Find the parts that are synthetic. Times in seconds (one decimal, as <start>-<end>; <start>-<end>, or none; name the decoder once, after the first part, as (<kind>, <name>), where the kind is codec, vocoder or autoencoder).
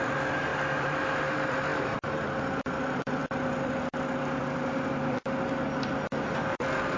0.5-1.2 (vocoder, BigVGAN v2); 1.7-3.6